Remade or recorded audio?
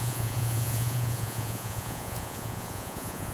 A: remade